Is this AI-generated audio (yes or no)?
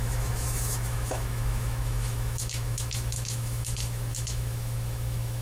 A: yes